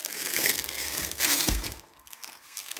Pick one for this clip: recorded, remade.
remade